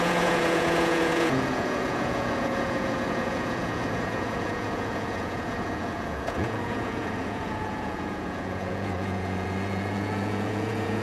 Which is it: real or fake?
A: fake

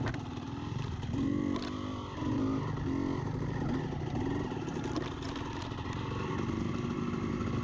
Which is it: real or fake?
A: real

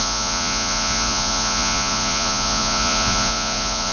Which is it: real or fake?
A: fake